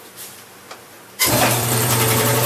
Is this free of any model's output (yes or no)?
no